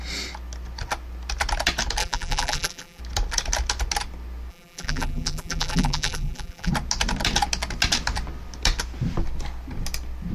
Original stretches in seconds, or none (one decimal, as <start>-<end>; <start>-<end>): 0.0-2.0; 3.0-4.5; 6.7-10.3